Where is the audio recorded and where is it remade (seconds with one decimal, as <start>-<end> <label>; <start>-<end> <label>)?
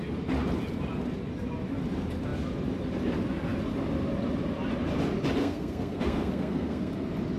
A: 0.0-5.4 recorded; 5.4-6.9 remade; 6.9-7.4 recorded